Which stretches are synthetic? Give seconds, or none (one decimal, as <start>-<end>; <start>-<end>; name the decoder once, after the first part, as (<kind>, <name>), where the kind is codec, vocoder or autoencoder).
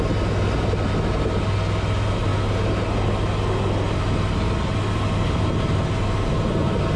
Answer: none